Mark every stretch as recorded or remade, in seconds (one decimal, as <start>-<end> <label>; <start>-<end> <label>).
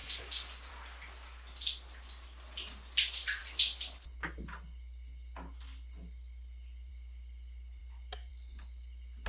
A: 0.0-9.3 recorded